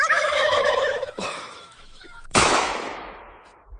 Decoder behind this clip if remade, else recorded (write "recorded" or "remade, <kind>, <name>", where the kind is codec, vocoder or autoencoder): remade, autoencoder, DAC-VAE